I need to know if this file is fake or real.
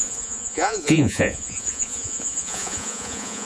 fake